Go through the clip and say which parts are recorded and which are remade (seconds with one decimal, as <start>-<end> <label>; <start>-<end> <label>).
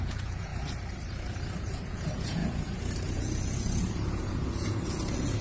0.0-0.5 remade; 0.5-1.6 recorded; 1.6-5.4 remade